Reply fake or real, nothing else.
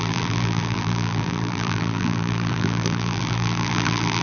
fake